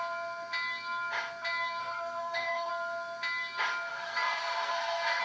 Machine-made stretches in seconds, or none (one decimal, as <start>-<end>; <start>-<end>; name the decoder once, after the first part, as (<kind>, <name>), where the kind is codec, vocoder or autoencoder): 1.8-2.7 (codec, SNAC); 3.9-5.2